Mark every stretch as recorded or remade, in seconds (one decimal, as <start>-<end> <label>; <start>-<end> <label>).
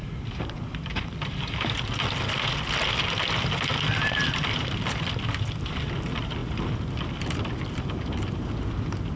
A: 0.0-9.2 recorded